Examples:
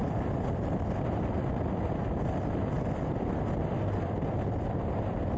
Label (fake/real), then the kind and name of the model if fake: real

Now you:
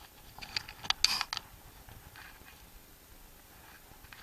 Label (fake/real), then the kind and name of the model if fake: real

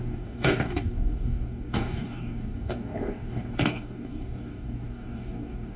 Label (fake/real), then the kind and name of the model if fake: fake, codec, DAC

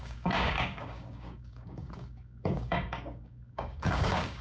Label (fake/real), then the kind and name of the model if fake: fake, codec, DAC